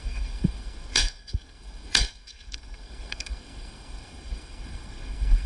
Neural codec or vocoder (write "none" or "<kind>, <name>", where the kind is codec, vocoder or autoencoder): codec, SNAC